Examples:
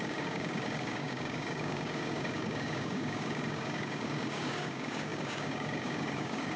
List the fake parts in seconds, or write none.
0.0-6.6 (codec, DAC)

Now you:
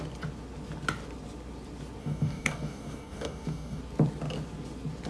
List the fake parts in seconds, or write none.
2.0-3.8 (codec, DAC)

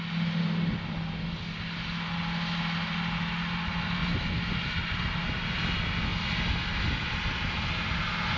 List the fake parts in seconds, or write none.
none

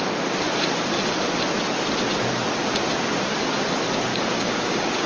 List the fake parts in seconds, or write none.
4.1-5.1 (codec, DAC)

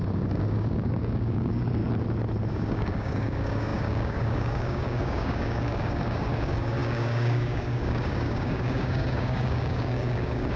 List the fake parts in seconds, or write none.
0.0-1.8 (codec, DAC); 2.5-10.6

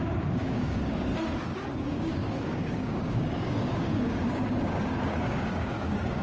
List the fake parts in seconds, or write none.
0.0-1.1 (codec, DAC); 1.8-6.2

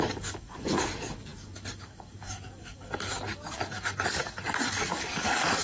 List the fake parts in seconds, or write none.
0.0-5.6 (codec, DAC)